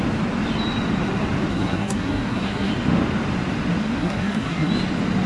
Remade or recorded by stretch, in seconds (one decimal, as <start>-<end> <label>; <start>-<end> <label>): 0.0-1.5 recorded; 1.5-2.7 remade; 2.7-3.8 recorded; 3.8-4.7 remade; 4.7-5.3 recorded